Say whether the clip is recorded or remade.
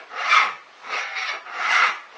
recorded